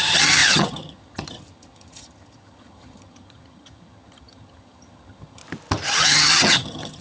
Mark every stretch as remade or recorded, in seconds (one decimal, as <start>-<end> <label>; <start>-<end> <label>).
0.0-5.4 remade; 5.4-6.0 recorded; 6.0-7.0 remade